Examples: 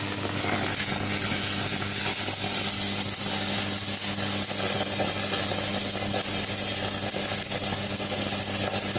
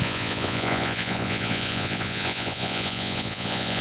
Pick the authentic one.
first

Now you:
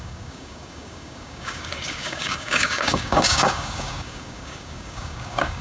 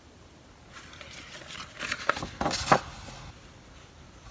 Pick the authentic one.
second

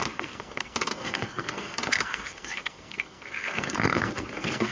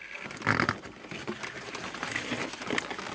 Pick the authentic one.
second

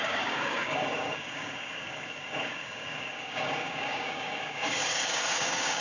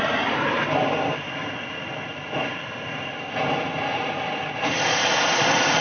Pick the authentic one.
second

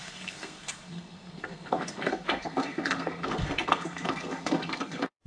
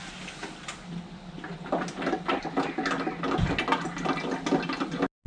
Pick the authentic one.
second